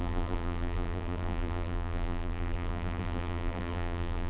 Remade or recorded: remade